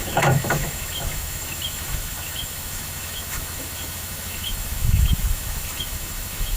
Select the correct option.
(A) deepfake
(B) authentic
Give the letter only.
A